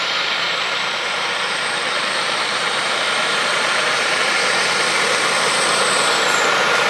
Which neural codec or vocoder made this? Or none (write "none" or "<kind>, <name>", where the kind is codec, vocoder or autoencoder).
vocoder, BigVGAN v2